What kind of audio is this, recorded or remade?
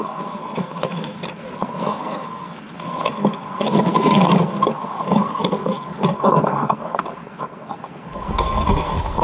remade